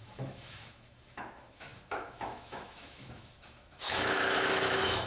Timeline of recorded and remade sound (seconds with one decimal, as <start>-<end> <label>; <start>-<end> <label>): 0.0-5.1 remade